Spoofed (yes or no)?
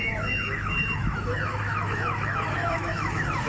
yes